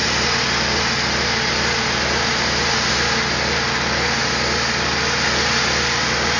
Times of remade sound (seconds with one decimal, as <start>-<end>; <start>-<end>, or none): none